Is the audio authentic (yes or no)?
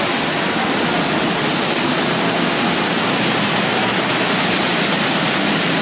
yes